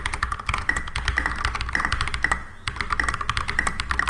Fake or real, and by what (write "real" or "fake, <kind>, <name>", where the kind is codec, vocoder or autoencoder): real